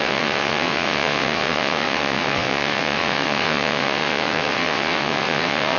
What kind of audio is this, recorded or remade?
remade